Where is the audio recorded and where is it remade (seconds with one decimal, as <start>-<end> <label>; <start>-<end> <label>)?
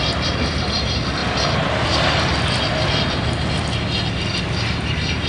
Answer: 0.0-5.3 recorded